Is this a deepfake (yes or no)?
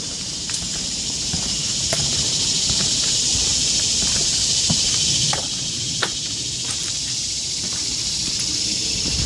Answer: yes